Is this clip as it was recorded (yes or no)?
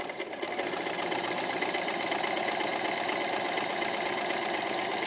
yes